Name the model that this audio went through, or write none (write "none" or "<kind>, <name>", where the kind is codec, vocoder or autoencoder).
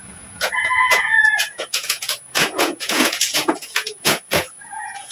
vocoder, Vocos